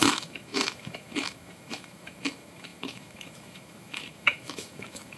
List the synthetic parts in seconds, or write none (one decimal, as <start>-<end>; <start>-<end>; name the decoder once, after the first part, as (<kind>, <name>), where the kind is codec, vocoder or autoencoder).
0.0-5.2 (autoencoder, DAC-VAE)

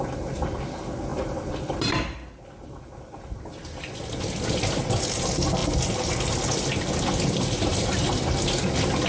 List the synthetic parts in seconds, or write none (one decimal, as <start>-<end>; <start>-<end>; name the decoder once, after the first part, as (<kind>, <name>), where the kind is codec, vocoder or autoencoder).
1.1-3.5 (vocoder, BigVGAN v2)

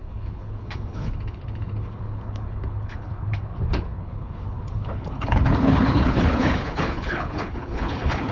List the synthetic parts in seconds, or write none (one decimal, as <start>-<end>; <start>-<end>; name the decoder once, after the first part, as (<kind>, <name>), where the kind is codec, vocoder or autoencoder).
0.0-8.3 (codec, HILCodec)

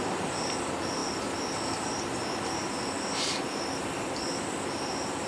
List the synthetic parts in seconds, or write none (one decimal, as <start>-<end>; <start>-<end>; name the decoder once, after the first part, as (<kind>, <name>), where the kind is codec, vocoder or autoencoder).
none

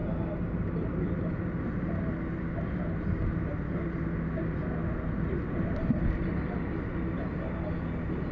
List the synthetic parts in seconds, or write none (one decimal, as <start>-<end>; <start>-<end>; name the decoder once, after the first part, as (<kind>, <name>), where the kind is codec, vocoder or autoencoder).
none

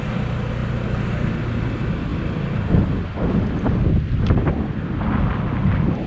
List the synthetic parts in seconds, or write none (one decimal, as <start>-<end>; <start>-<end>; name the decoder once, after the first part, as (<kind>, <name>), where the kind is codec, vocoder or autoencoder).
none

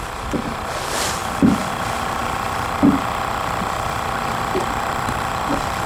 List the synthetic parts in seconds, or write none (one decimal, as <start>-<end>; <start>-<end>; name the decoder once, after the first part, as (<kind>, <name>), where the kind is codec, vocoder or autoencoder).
0.0-1.2 (vocoder, BigVGAN v2); 1.7-2.2; 4.9-5.9

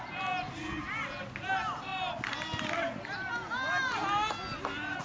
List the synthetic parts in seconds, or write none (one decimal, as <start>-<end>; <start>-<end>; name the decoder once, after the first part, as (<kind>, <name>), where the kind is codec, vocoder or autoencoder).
none